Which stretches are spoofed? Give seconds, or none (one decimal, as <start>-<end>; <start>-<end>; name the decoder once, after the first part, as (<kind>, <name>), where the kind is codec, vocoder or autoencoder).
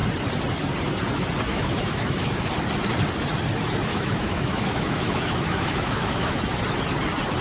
1.5-2.5 (autoencoder, DAC-VAE); 3.9-6.4